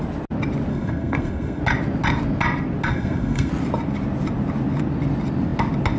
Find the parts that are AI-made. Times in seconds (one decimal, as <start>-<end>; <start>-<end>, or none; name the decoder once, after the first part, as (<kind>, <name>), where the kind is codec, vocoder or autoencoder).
0.7-1.6 (codec, SNAC); 2.9-3.5